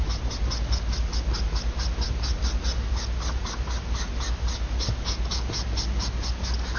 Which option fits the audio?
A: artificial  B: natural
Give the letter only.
B